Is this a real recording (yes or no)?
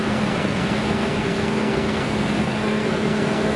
no